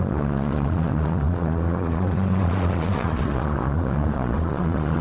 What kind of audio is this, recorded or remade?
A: remade